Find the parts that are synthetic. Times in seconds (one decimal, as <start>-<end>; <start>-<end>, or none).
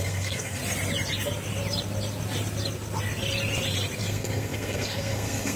0.0-0.6; 4.0-5.6